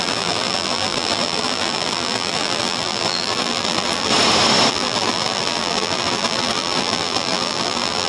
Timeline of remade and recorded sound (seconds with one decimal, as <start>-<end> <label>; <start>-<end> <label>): 0.0-4.1 remade; 4.1-4.7 recorded; 4.7-8.1 remade